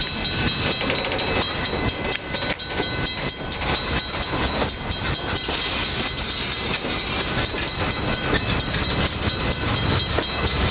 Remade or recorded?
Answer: recorded